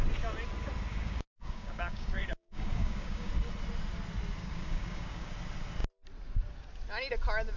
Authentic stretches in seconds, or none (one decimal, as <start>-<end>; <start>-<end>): 0.0-0.9; 3.3-4.4; 5.3-7.6